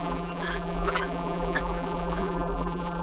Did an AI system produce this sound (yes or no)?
yes